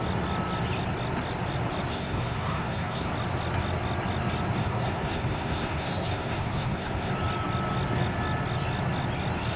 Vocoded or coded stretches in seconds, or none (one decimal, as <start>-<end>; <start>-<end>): 1.9-3.1; 4.6-7.1